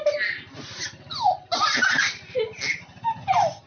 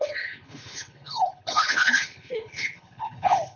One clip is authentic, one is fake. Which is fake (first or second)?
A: second